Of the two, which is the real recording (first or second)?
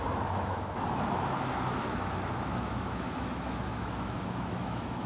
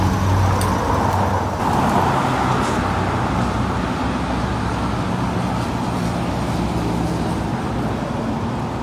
second